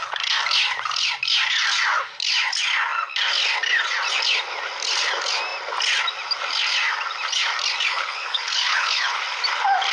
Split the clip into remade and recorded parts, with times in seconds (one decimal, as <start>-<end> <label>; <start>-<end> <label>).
0.0-7.9 recorded; 7.9-9.2 remade; 9.2-9.9 recorded

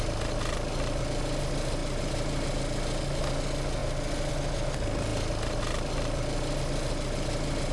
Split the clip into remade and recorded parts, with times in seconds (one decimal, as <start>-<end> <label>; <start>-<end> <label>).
0.0-7.7 recorded